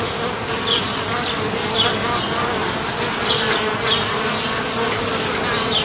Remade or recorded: recorded